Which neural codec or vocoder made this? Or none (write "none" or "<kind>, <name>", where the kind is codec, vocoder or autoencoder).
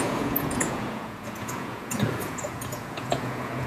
vocoder, Vocos